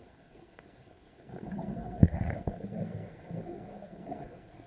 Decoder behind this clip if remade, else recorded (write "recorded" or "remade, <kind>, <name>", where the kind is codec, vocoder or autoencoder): remade, codec, SNAC